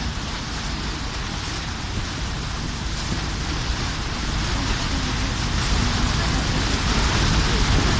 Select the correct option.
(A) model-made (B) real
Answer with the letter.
B